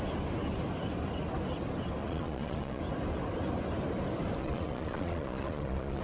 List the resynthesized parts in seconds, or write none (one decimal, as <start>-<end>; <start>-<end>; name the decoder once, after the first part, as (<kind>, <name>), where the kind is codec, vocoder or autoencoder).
2.0-2.8 (vocoder, Vocos); 4.4-6.0